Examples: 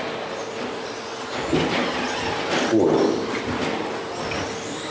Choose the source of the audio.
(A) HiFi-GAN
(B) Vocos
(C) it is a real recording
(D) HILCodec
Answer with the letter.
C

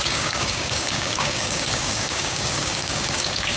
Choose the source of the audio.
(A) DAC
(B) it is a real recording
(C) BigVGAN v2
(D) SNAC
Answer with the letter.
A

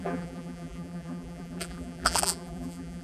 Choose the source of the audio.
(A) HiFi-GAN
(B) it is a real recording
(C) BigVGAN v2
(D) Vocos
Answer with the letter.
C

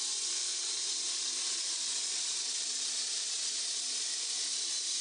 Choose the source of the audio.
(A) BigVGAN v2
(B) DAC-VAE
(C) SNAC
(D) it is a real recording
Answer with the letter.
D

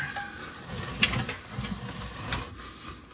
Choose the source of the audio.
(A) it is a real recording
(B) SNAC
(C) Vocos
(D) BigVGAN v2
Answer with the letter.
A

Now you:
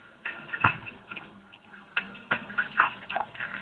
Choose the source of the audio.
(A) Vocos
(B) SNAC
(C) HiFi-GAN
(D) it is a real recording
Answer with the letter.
B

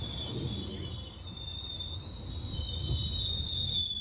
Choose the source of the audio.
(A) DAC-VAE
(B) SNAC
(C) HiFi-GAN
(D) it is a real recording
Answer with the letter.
D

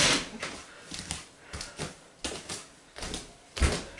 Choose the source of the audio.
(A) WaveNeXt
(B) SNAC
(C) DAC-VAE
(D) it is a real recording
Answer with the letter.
D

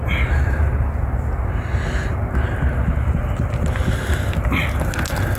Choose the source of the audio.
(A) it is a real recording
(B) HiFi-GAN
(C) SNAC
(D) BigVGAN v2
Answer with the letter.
A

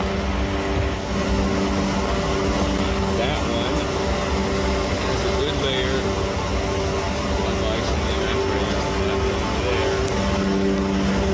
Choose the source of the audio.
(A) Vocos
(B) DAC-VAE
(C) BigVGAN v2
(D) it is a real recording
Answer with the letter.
D